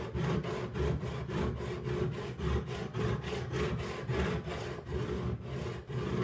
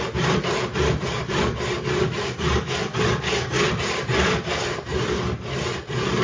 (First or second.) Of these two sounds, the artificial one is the second